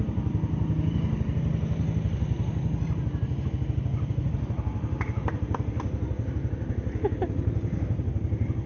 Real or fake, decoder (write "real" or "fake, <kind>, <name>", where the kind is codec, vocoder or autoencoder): real